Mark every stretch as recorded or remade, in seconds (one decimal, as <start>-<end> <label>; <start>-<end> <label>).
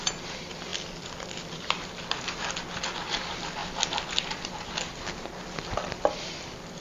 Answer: 0.0-6.8 recorded